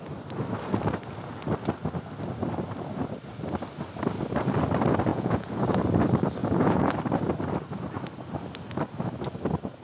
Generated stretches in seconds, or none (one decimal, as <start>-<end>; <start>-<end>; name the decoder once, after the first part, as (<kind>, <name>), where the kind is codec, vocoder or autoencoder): 5.1-5.8 (vocoder, Vocos); 6.4-6.9